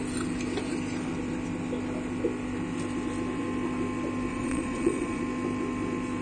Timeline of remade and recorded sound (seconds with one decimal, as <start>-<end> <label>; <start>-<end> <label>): 0.0-4.3 recorded; 4.3-5.2 remade; 5.2-6.2 recorded